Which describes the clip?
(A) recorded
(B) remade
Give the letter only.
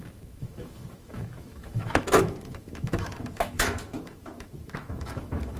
B